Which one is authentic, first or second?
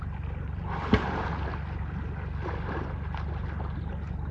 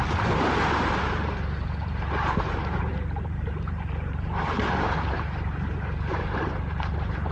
first